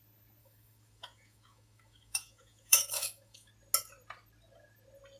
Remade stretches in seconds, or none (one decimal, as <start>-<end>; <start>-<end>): 0.4-3.5